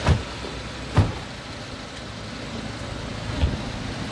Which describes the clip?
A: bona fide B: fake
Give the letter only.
A